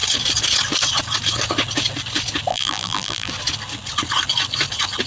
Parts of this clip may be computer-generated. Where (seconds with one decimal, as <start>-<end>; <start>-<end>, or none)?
2.5-3.3